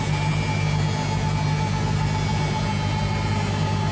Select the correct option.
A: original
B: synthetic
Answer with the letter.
A